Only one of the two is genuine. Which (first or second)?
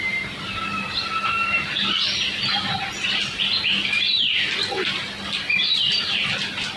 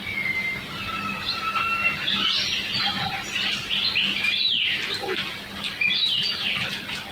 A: second